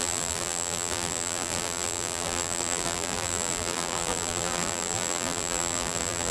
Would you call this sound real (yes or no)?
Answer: no